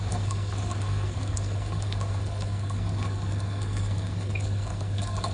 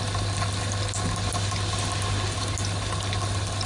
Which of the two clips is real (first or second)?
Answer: second